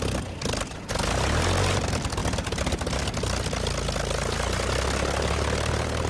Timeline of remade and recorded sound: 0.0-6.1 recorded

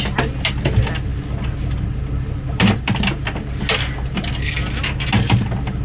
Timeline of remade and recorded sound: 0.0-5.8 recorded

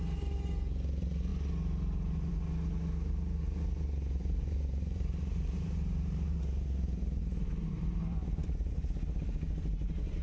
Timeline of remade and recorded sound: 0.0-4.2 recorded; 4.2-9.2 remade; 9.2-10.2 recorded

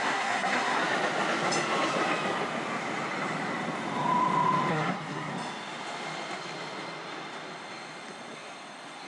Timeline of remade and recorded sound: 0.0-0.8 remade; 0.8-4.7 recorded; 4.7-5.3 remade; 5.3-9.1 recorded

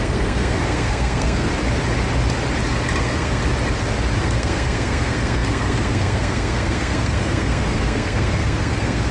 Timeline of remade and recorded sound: 0.0-1.5 remade; 1.5-3.0 recorded; 3.0-3.4 remade; 3.4-4.2 recorded; 4.2-9.1 remade

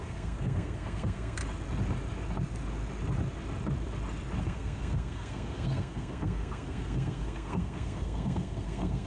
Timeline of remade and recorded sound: 0.0-1.4 remade; 1.4-4.4 recorded; 4.4-9.1 remade